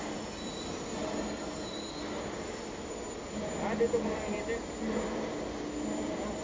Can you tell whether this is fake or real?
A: real